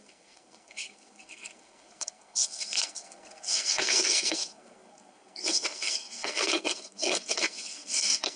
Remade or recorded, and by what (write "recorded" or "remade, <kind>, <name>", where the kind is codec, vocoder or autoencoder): remade, codec, SNAC